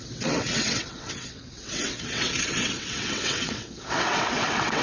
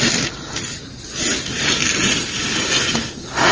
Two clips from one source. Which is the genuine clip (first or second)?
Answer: second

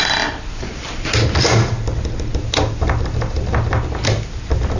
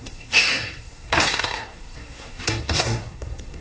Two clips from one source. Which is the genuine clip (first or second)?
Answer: first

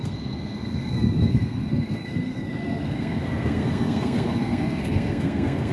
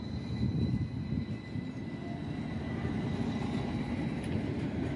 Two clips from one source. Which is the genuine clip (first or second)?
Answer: second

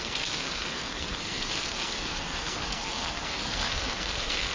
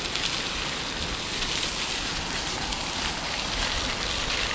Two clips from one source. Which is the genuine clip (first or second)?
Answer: second